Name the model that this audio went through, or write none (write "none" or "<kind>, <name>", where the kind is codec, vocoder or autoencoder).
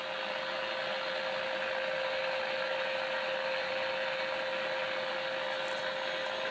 none